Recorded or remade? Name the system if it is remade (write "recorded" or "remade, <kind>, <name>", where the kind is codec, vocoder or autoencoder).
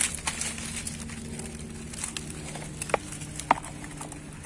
recorded